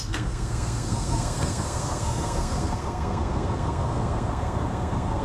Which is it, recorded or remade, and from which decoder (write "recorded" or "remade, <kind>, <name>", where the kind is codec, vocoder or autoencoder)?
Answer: remade, codec, SNAC